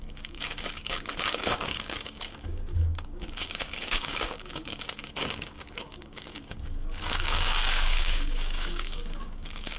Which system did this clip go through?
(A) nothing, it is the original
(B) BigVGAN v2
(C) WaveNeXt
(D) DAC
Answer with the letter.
D